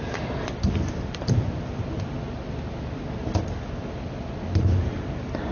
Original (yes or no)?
yes